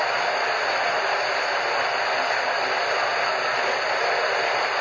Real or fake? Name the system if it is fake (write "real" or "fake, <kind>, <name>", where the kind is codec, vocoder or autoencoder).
real